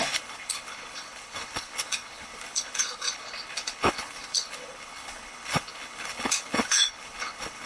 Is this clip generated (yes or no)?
yes